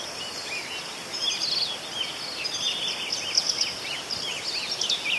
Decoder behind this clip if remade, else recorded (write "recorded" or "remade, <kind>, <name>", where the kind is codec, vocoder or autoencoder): recorded